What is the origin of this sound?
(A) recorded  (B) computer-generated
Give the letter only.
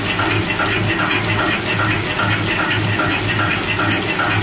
A